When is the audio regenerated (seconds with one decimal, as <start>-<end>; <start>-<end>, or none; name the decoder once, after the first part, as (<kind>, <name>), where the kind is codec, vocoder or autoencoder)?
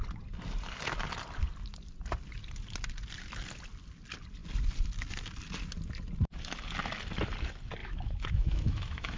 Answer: 7.8-9.2 (autoencoder, DAC-VAE)